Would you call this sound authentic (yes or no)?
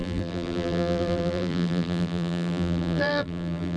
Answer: no